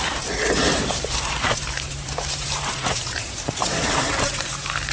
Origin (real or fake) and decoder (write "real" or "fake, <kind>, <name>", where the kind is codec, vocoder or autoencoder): fake, vocoder, BigVGAN v2